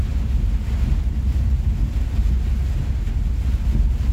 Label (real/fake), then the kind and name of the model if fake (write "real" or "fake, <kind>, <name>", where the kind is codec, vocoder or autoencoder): real